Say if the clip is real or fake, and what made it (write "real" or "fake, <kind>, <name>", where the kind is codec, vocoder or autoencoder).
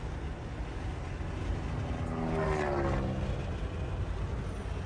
real